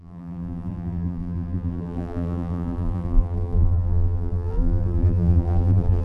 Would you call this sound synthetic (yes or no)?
yes